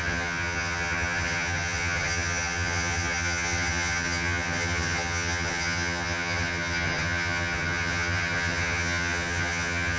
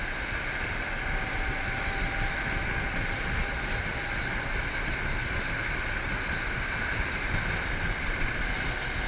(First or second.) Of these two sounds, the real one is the second